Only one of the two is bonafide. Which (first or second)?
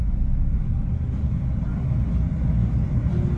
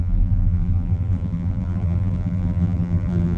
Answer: first